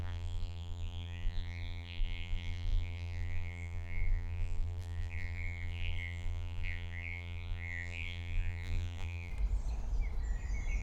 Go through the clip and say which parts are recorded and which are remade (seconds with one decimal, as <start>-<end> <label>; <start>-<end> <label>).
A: 0.0-9.3 remade; 9.3-10.8 recorded